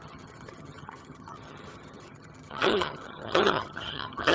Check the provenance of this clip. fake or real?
fake